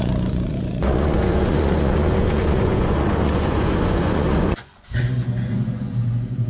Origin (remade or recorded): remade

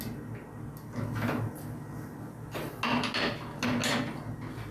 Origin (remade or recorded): recorded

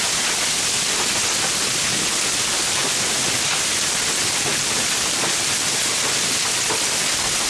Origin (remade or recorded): recorded